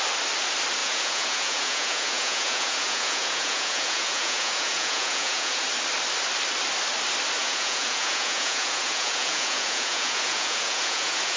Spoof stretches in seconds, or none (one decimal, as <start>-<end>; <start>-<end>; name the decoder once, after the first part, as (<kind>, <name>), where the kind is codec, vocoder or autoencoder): 0.8-5.6 (vocoder, Vocos); 7.4-11.4